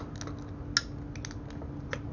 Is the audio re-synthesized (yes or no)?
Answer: no